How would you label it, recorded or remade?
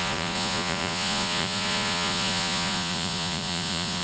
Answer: remade